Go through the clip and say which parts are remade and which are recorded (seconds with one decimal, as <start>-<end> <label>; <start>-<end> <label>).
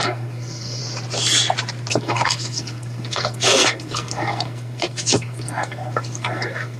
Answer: 0.0-0.8 remade; 0.8-1.9 recorded; 1.9-6.8 remade